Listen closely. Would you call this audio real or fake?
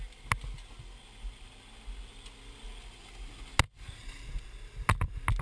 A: real